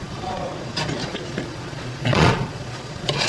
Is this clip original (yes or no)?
no